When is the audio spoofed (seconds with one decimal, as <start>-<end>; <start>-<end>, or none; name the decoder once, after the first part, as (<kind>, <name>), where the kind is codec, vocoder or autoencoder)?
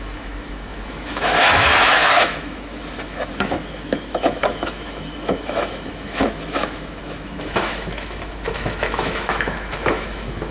0.0-10.5 (autoencoder, DAC-VAE)